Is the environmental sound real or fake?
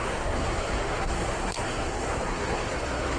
fake